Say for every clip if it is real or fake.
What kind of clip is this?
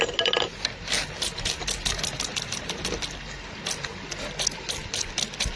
real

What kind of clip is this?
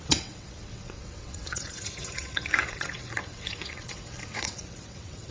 fake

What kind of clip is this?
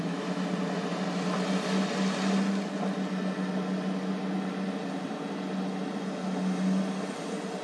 real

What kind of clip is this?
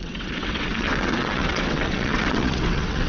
fake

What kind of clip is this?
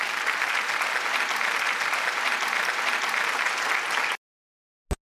real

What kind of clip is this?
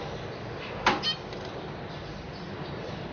real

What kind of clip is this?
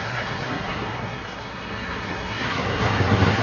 fake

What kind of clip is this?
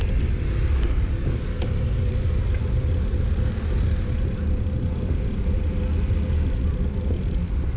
real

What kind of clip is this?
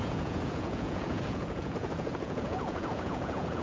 fake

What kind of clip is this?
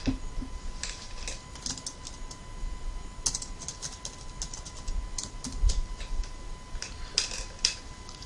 real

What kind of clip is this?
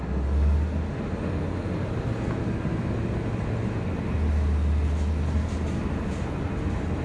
real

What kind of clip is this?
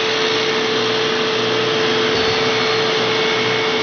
real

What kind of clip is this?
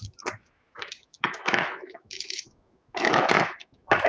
fake